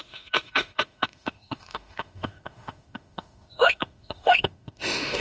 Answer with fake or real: fake